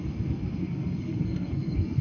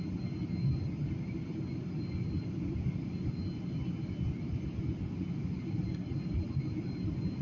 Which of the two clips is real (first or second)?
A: second